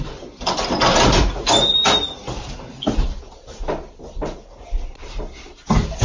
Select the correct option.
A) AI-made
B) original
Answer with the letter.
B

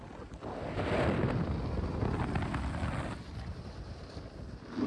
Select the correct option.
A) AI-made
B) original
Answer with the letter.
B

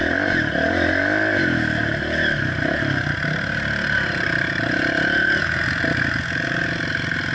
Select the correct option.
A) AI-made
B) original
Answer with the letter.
B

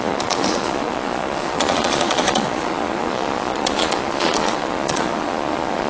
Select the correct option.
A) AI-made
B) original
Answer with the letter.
A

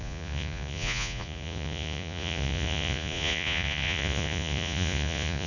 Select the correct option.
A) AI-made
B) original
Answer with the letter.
A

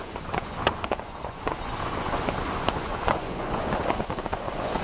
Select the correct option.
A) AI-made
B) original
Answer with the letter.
A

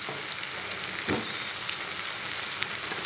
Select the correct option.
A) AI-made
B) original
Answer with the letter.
B